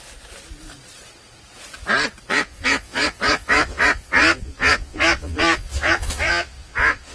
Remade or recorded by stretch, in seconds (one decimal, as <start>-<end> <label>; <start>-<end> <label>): 0.0-2.3 recorded; 2.3-7.1 remade